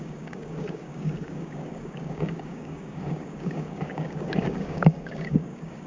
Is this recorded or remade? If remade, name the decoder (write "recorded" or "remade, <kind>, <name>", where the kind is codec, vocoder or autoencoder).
remade, codec, DAC